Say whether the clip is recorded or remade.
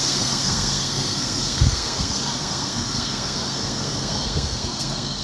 remade